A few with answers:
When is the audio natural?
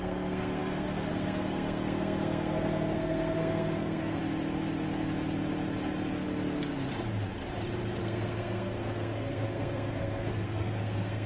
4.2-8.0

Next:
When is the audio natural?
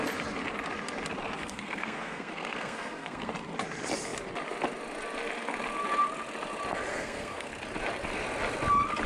0.0-1.4; 3.3-6.9; 7.5-9.1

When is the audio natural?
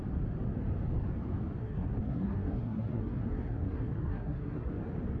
0.0-1.6; 4.7-5.2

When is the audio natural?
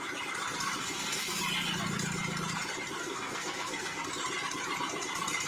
0.0-0.8; 1.4-3.0; 4.1-5.5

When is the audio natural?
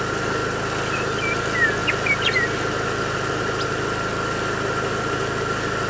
0.0-5.9